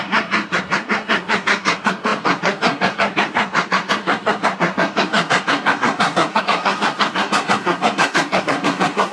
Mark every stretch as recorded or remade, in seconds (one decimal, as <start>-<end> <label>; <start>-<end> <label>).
0.0-9.1 remade